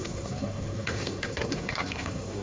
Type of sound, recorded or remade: remade